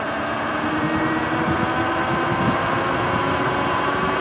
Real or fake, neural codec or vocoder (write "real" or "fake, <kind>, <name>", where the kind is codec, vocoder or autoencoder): real